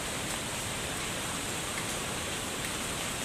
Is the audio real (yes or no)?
no